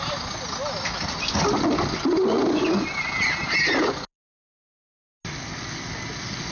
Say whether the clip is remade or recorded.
recorded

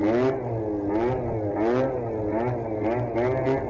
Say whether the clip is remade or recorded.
recorded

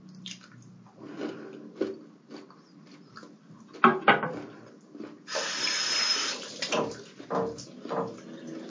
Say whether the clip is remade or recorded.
recorded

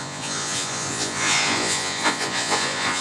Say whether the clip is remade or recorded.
remade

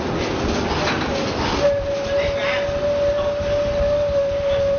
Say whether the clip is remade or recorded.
recorded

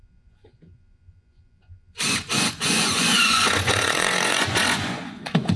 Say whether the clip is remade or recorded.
remade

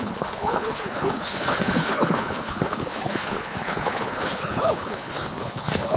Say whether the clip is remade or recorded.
remade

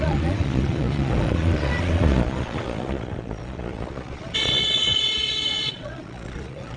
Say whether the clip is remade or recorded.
remade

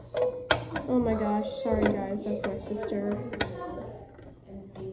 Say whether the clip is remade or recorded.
recorded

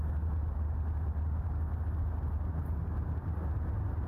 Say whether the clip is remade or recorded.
recorded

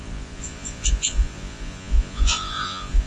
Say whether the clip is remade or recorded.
remade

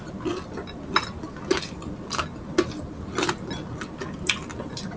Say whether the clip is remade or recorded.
recorded